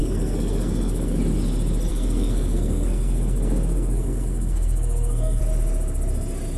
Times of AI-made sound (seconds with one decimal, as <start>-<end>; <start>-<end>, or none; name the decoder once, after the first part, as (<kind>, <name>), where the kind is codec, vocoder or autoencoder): 0.0-1.2 (codec, SNAC); 1.9-5.4